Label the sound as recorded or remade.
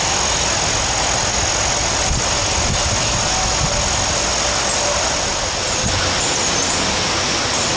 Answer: recorded